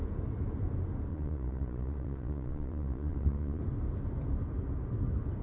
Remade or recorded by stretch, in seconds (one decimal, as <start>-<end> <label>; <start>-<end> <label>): 0.0-1.1 recorded; 1.1-3.6 remade; 3.6-5.4 recorded